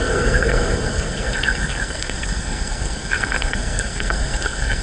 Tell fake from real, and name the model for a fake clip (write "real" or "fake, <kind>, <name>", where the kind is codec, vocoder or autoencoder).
fake, codec, SNAC